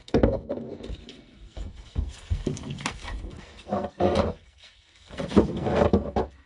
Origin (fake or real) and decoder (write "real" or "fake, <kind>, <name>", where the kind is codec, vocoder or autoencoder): fake, codec, SNAC